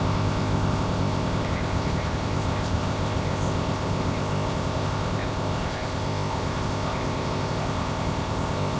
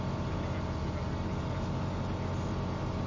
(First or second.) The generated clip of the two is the first